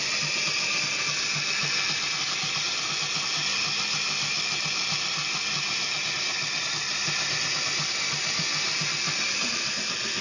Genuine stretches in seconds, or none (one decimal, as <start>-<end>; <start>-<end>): 0.0-10.2